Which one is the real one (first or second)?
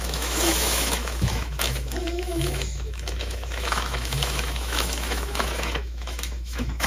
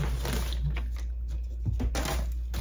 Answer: second